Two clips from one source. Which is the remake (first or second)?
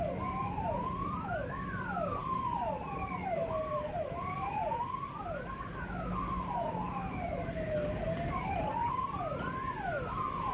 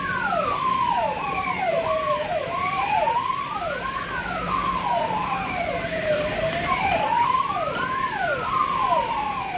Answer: second